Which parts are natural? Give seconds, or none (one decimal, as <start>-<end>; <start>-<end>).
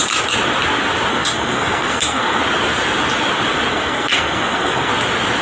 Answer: 0.0-1.1; 2.4-3.7; 4.9-5.4